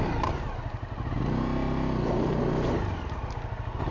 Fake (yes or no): no